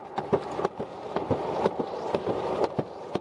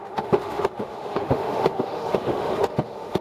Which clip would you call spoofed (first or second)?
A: second